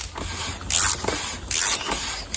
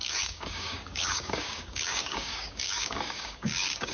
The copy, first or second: second